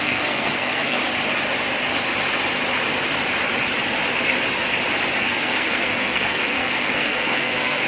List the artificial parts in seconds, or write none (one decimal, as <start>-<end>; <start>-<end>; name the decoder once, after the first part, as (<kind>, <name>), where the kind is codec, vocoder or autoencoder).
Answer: 0.0-1.0 (codec, SNAC); 5.2-7.9